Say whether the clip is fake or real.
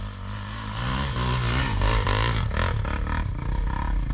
real